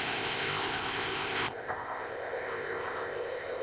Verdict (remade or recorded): remade